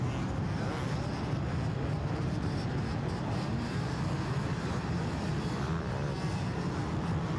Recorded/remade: recorded